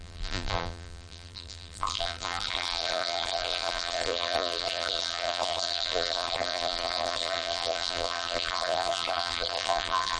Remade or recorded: remade